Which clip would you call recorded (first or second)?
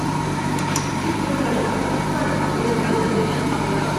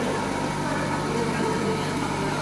second